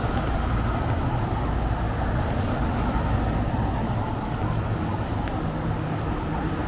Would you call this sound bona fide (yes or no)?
yes